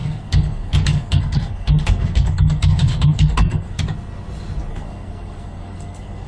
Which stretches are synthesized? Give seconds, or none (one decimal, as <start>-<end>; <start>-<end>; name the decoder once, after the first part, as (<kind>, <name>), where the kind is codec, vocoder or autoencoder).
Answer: 0.0-3.8 (codec, SNAC); 4.7-6.3